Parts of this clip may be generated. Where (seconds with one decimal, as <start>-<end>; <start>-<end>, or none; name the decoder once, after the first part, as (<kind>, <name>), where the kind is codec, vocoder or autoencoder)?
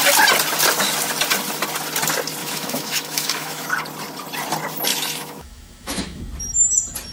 2.4-3.7 (autoencoder, DAC-VAE); 4.9-6.2